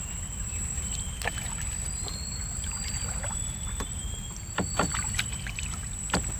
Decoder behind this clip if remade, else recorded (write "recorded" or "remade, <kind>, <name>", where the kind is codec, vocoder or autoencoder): recorded